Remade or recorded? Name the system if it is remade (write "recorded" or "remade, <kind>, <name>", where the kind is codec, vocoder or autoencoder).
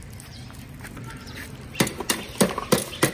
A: remade, vocoder, BigVGAN v2